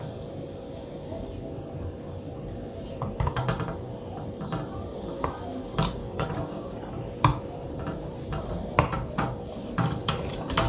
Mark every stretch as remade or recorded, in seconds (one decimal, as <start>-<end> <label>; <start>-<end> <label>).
0.0-6.0 recorded; 6.0-6.9 remade; 6.9-10.7 recorded